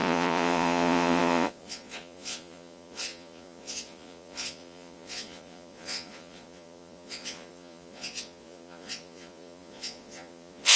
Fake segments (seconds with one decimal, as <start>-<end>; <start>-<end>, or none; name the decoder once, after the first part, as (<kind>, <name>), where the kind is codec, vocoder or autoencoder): 0.0-10.8 (vocoder, Vocos)